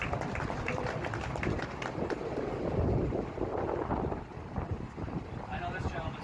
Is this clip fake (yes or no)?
no